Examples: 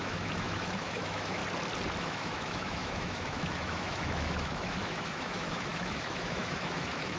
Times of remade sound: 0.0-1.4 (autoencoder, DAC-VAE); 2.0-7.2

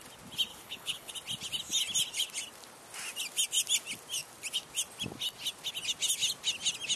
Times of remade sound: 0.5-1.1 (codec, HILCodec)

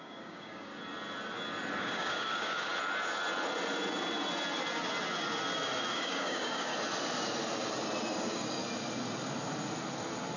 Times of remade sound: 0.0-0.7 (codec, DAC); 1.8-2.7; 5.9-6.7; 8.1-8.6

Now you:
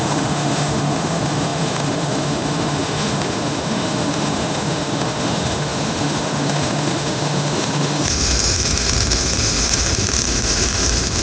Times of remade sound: 0.0-11.2 (autoencoder, DAC-VAE)

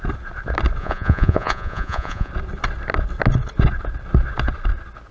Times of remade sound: 0.8-2.3 (vocoder, Vocos)

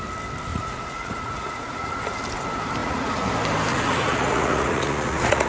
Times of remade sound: 0.5-2.1 (vocoder, Vocos); 2.8-3.3; 3.7-5.5